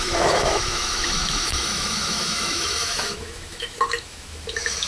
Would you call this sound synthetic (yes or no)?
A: yes